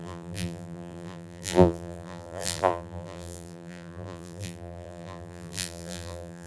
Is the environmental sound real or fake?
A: fake